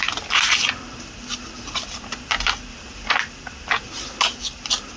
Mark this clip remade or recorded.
remade